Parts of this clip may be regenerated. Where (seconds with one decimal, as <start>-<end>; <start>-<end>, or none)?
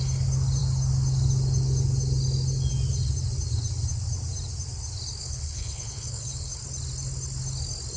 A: 5.2-6.6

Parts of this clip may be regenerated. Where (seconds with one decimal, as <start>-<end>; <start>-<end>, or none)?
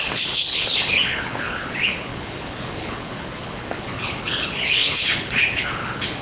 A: 0.0-6.2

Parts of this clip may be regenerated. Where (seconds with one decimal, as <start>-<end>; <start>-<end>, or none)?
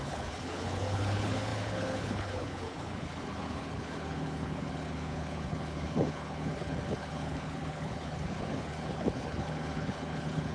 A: 0.0-10.5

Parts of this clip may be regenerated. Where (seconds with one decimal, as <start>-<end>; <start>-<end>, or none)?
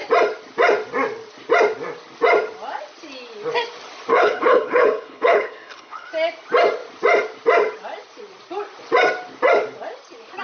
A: 4.1-6.1